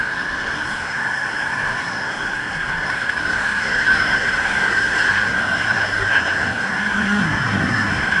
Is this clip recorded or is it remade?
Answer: remade